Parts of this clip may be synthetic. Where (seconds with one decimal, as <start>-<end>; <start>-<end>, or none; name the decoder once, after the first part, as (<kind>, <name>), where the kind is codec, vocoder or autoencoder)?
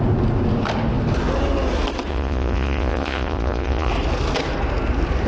2.1-3.9 (vocoder, Vocos)